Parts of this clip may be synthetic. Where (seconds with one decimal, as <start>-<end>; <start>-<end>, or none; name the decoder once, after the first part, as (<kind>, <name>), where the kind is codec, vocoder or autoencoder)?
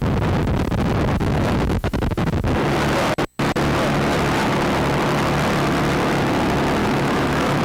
1.2-2.3 (autoencoder, DAC-VAE); 6.8-7.6